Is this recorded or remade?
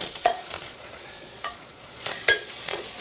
remade